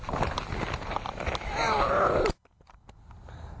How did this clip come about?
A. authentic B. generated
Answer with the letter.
A